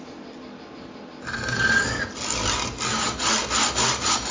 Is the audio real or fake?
real